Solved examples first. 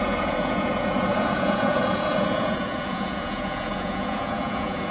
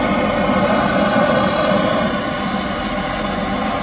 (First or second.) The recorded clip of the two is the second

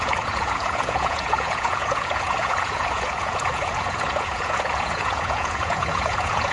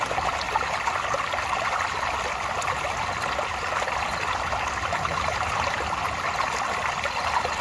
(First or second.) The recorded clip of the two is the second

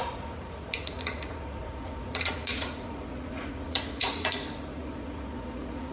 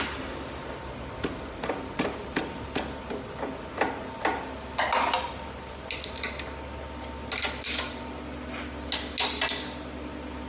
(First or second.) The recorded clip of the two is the second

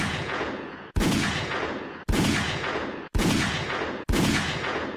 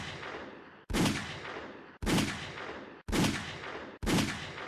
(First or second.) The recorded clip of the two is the second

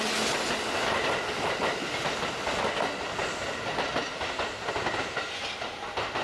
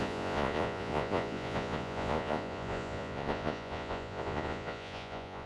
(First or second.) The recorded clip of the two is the first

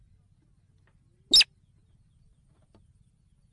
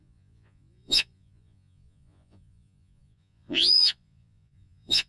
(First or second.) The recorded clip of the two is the first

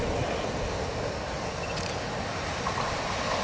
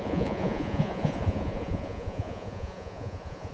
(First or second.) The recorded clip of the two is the first